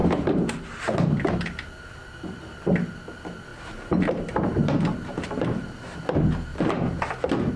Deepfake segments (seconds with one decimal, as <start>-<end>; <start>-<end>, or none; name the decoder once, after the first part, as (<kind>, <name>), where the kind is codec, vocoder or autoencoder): 0.0-1.9 (vocoder, BigVGAN v2); 3.5-6.0; 6.5-7.1